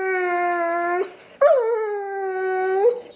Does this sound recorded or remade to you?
recorded